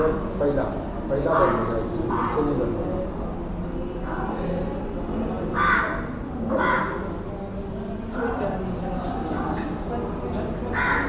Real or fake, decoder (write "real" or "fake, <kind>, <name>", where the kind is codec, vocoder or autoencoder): real